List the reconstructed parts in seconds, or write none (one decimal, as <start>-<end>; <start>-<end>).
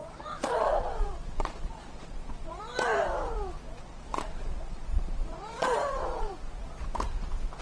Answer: 0.0-2.6; 3.8-6.3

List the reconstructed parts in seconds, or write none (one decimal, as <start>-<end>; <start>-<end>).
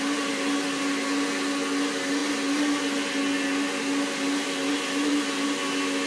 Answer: none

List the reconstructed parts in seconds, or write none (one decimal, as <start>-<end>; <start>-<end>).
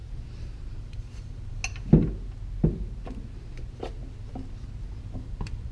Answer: 0.7-1.6; 5.0-5.7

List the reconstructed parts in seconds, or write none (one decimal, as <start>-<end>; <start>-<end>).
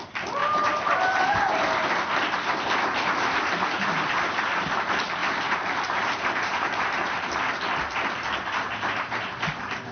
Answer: 0.4-1.5; 5.2-7.3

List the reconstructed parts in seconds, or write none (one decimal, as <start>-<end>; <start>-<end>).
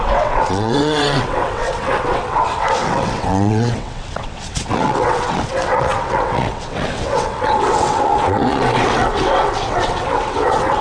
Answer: 0.0-10.8